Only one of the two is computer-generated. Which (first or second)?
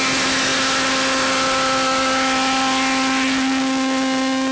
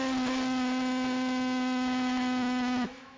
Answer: second